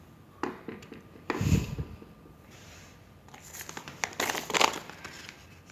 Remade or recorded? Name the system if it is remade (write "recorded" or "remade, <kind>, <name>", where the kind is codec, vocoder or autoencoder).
recorded